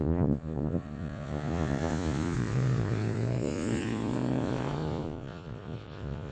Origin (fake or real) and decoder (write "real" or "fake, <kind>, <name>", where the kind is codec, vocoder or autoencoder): fake, vocoder, Vocos